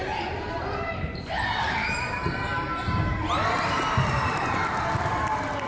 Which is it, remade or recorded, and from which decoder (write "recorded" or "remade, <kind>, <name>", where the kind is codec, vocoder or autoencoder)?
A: remade, vocoder, BigVGAN v2